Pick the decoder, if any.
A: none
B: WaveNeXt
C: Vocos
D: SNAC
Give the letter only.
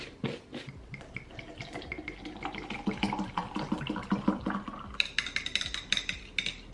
A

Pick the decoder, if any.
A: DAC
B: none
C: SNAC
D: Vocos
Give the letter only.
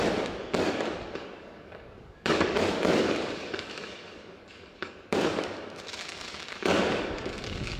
A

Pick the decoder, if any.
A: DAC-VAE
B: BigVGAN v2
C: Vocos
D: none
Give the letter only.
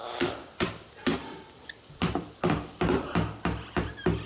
B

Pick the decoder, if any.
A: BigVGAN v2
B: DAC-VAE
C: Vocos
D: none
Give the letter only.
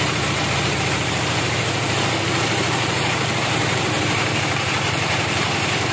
A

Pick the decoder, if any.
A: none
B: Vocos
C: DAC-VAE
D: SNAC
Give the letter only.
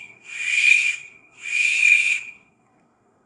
D